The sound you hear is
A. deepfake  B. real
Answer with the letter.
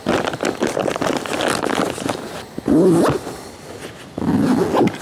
B